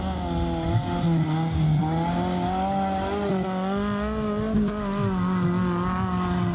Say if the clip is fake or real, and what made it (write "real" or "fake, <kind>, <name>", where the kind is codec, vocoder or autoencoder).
real